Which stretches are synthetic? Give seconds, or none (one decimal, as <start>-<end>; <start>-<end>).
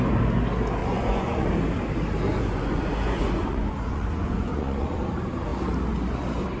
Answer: 0.8-1.5; 2.3-5.0